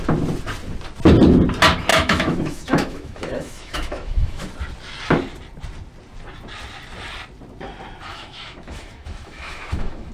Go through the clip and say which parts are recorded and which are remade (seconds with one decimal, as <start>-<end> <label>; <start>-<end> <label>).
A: 0.0-1.9 recorded; 1.9-4.5 remade; 4.5-8.1 recorded; 8.1-10.1 remade

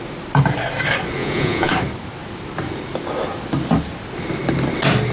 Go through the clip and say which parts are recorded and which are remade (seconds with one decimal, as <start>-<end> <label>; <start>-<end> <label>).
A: 0.0-1.2 recorded; 1.2-1.7 remade; 1.7-5.1 recorded

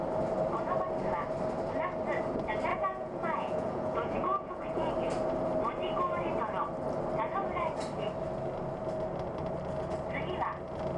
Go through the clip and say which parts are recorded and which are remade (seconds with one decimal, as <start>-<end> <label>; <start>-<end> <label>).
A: 0.0-2.7 recorded; 2.7-4.9 remade; 4.9-11.0 recorded

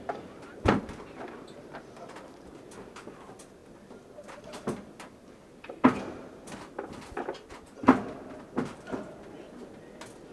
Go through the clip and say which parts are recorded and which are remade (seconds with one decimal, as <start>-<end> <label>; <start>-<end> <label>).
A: 0.0-10.3 recorded

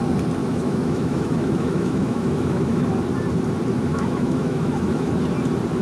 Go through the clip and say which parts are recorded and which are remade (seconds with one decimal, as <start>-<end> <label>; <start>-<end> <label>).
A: 0.0-0.4 recorded; 0.4-2.9 remade; 2.9-3.9 recorded; 3.9-5.1 remade; 5.1-5.8 recorded